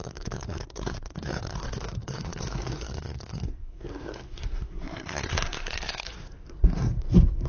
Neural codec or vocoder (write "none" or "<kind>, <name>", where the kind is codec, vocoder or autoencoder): codec, SNAC